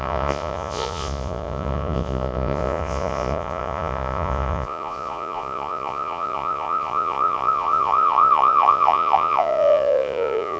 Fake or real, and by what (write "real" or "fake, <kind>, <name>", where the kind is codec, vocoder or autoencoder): fake, vocoder, Vocos